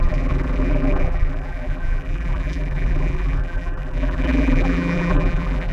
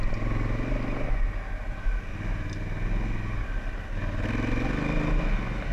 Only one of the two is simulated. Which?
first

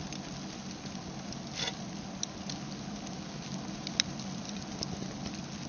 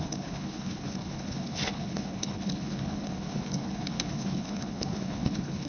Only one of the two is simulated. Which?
second